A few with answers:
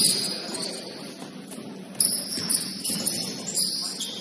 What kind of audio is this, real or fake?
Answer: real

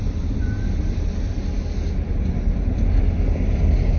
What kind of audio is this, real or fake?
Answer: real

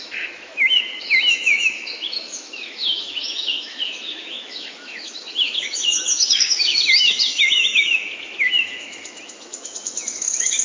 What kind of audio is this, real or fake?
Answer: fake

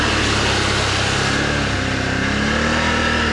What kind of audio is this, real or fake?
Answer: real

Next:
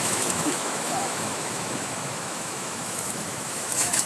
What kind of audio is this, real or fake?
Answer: fake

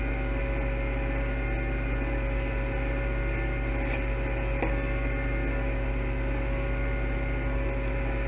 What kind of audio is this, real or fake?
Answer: real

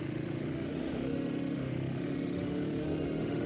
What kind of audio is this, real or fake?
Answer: fake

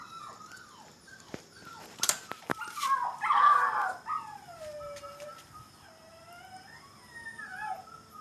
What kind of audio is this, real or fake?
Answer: real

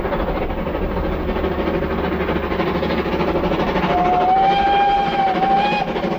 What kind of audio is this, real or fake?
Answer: real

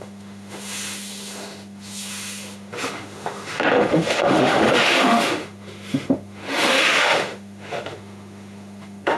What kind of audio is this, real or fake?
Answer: fake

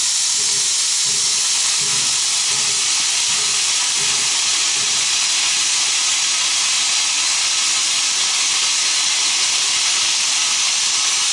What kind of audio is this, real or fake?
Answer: real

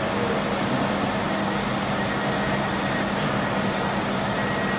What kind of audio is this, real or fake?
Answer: real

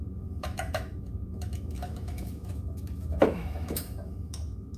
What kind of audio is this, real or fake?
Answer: fake